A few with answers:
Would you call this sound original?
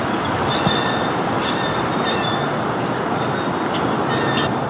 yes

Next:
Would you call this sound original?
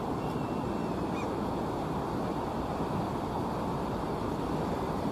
no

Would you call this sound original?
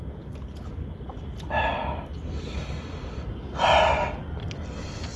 yes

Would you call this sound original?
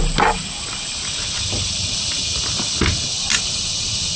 yes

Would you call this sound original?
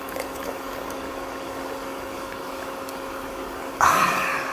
no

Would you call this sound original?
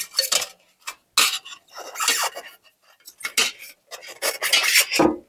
yes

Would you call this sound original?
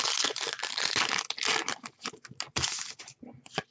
yes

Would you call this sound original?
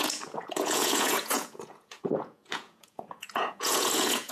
no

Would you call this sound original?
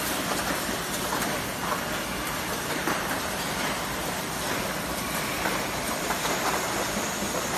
no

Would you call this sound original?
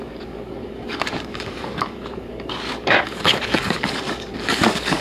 no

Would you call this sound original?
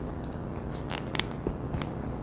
no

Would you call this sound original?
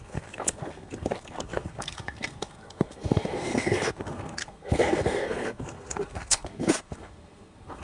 no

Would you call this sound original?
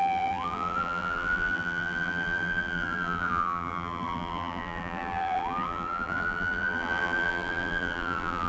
no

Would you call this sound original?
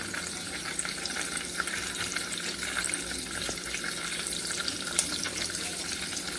no